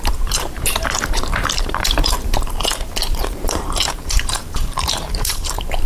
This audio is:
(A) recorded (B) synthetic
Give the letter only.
B